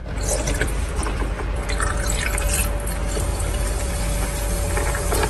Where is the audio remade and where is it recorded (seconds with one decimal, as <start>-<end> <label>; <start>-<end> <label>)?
0.0-2.6 remade; 2.6-3.3 recorded; 3.3-3.9 remade; 3.9-5.3 recorded